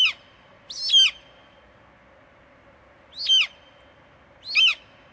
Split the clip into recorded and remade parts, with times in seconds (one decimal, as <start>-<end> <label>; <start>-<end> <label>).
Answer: 0.0-5.1 recorded